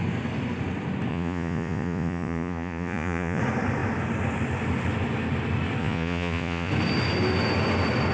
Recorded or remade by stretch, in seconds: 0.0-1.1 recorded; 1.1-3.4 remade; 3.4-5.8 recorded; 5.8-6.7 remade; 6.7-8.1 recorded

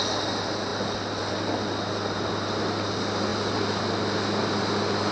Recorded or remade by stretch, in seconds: 0.0-5.1 recorded

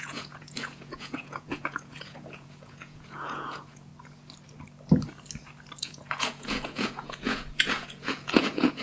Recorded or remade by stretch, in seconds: 0.0-3.9 remade; 3.9-5.8 recorded; 5.8-8.8 remade